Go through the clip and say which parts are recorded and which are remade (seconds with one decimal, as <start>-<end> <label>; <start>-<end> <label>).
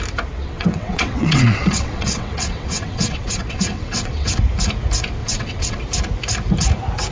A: 0.0-0.4 recorded; 0.4-4.3 remade; 4.3-5.2 recorded; 5.2-5.8 remade; 5.8-7.1 recorded